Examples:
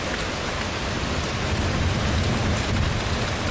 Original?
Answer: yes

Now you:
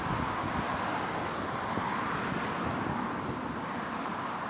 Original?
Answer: yes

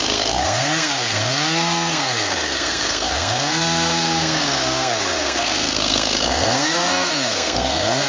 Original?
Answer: no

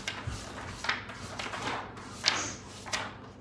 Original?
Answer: yes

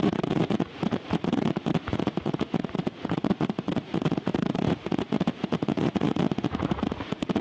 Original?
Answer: no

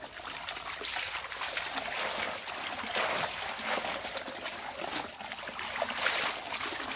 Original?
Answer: yes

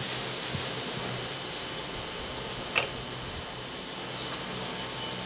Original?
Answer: yes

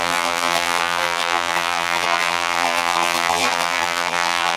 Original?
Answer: no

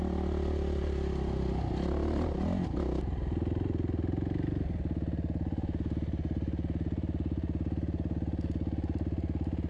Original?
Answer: yes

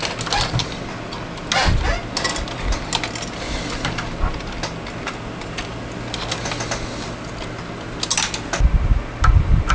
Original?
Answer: yes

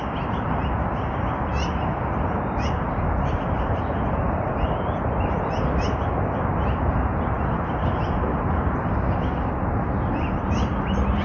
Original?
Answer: yes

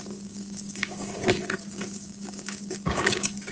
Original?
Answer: no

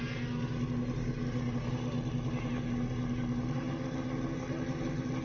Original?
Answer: yes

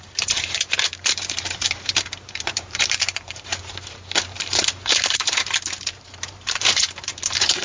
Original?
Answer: no